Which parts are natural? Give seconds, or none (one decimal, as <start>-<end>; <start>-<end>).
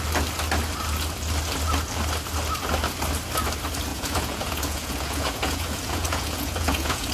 0.0-3.9